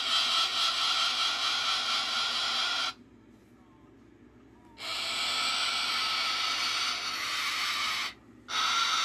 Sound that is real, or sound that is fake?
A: real